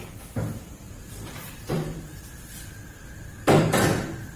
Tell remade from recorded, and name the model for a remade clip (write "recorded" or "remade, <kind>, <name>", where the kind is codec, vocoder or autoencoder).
remade, vocoder, BigVGAN v2